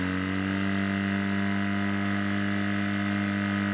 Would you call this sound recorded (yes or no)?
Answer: yes